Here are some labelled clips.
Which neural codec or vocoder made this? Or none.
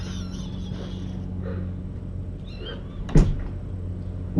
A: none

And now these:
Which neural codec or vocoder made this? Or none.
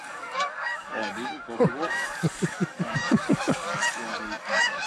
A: codec, DAC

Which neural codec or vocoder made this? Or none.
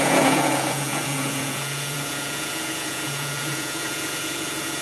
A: vocoder, Vocos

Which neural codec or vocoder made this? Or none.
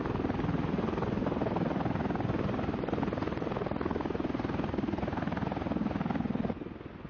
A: none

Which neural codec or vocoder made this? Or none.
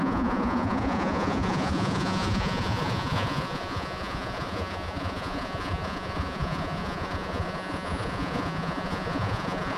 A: vocoder, Vocos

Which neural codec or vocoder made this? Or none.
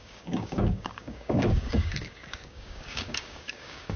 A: codec, DAC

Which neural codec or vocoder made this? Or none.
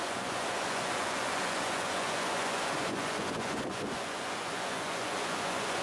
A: vocoder, Vocos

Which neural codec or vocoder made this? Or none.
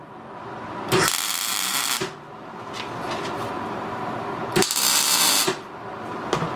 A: none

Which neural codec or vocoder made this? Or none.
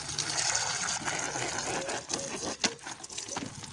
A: none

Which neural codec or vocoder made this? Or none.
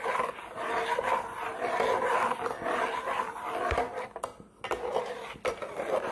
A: none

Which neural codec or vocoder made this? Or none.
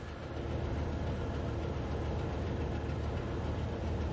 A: none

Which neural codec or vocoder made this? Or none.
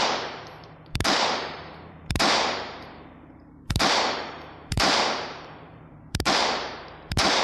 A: vocoder, BigVGAN v2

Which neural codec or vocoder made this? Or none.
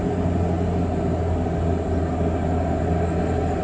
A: none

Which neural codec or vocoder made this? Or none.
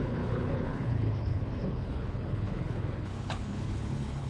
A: codec, HILCodec